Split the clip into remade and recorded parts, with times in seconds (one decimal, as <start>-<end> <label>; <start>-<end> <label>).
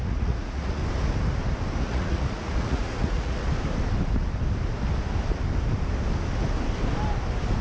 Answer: 0.0-0.8 remade; 0.8-1.8 recorded; 1.8-3.4 remade; 3.4-7.6 recorded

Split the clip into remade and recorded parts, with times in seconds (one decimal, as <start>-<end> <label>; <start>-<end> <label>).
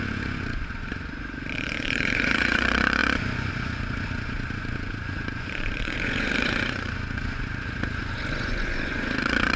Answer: 0.0-9.6 remade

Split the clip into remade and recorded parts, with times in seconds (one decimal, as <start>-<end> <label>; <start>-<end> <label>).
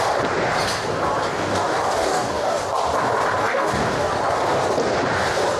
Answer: 0.0-1.3 recorded; 1.3-2.6 remade; 2.6-3.4 recorded; 3.4-4.1 remade; 4.1-5.6 recorded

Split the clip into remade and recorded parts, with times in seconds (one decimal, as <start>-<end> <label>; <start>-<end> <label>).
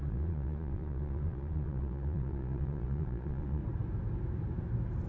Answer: 0.0-3.6 remade; 3.6-5.1 recorded